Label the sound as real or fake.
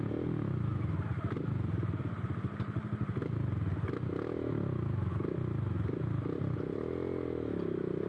real